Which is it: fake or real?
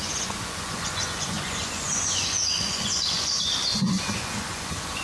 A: fake